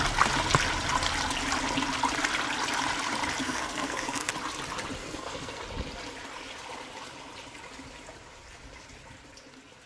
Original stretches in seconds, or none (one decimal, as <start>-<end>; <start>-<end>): 0.0-3.4; 4.3-5.0; 5.6-9.9